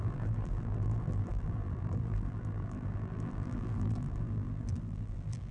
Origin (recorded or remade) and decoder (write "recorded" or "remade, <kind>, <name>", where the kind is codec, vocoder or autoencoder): remade, vocoder, BigVGAN v2